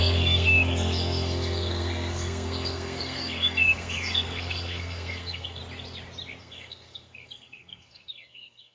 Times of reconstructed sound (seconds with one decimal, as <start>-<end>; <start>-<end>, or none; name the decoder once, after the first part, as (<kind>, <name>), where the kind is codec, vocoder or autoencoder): 0.0-5.6 (codec, SNAC); 6.4-8.7